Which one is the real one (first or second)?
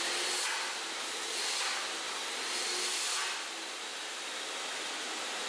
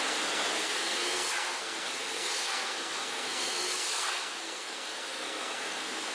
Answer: first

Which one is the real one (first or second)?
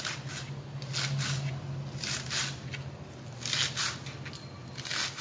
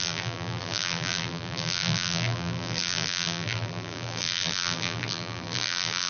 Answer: first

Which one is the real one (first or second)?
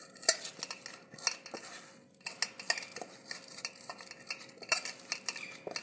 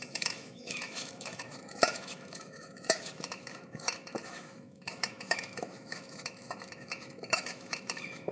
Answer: first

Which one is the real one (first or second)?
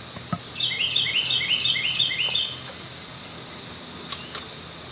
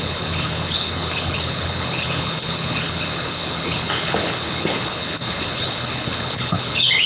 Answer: first